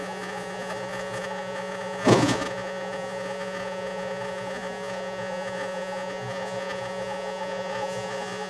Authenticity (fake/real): fake